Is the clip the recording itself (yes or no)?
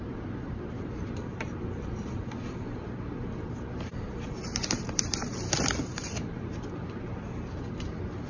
no